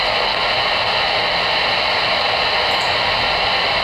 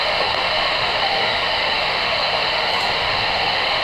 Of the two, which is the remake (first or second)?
second